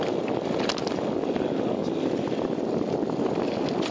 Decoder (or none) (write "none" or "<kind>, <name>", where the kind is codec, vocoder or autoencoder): none